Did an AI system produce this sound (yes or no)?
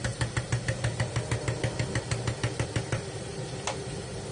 no